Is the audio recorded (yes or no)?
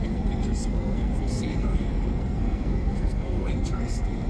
no